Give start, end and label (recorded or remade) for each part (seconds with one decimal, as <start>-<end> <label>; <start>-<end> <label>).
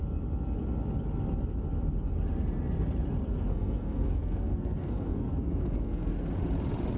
0.0-3.5 recorded; 3.5-6.1 remade; 6.1-7.0 recorded